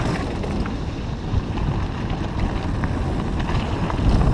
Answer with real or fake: real